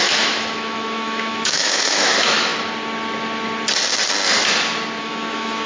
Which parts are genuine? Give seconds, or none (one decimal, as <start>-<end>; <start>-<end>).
2.5-5.0